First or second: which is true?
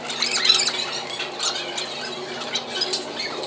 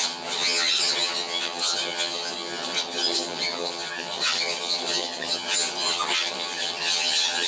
first